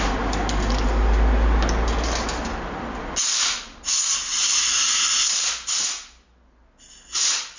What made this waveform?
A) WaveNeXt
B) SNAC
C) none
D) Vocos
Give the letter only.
C